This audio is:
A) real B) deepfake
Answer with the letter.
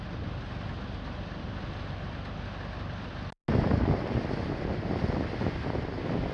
A